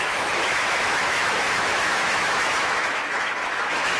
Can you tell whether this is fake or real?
fake